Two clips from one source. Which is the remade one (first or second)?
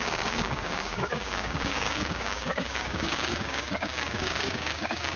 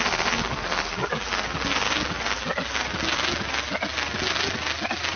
first